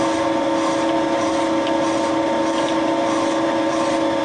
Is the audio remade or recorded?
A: recorded